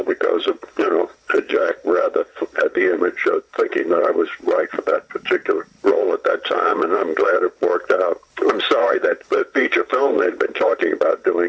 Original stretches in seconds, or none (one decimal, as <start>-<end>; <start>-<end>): 5.4-5.9; 7.7-8.8